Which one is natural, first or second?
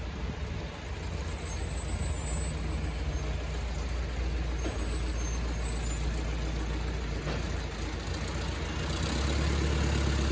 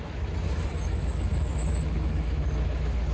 first